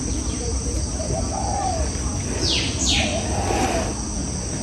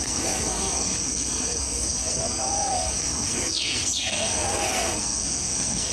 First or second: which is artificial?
second